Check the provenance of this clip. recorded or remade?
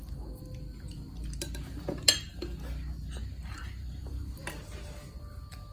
recorded